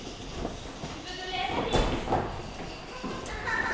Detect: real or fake real